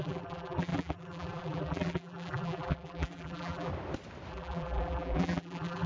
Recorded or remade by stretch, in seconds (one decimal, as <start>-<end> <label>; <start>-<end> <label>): 0.0-3.7 remade; 3.7-4.3 recorded; 4.3-5.9 remade